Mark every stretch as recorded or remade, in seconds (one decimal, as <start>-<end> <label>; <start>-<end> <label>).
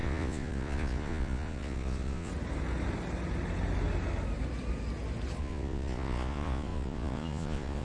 0.0-2.3 remade; 2.3-5.4 recorded; 5.4-7.8 remade